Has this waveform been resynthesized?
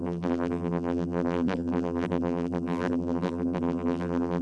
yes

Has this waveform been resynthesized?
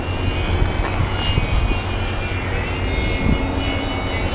no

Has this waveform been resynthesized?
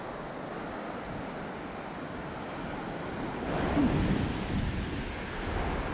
no